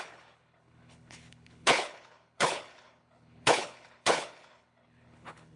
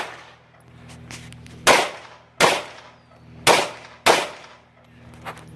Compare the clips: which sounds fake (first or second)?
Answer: first